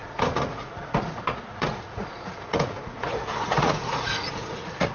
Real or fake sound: fake